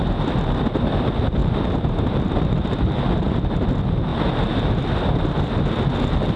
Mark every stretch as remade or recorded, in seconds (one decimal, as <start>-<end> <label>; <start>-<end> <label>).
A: 0.0-1.4 recorded; 1.4-2.3 remade; 2.3-6.4 recorded